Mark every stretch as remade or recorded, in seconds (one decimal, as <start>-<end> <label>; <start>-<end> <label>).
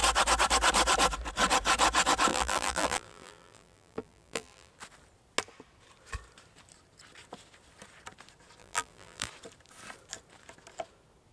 0.0-2.3 recorded; 2.3-4.7 remade; 4.7-8.6 recorded; 8.6-9.3 remade; 9.3-11.3 recorded